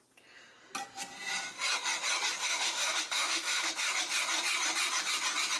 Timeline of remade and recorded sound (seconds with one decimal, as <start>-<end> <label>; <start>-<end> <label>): 0.0-2.4 recorded; 2.4-3.7 remade; 3.7-5.6 recorded